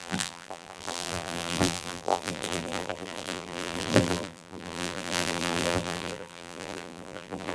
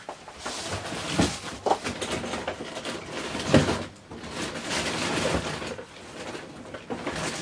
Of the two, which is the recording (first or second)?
second